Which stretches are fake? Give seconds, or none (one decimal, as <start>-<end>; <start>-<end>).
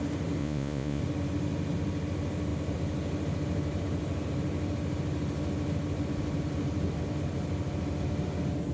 0.4-1.0